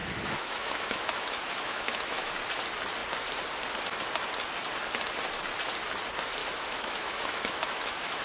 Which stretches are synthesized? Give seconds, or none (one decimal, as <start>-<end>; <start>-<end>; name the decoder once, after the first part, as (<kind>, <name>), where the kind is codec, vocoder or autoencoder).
0.0-2.3 (autoencoder, DAC-VAE); 6.4-8.2